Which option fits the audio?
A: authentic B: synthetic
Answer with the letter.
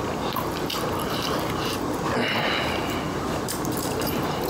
A